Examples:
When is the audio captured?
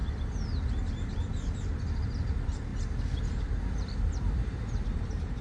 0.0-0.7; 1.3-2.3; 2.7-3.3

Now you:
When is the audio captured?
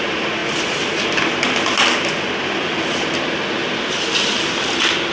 0.0-5.1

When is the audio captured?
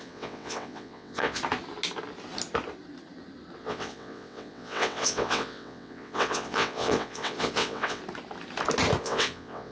1.4-3.6; 8.0-9.0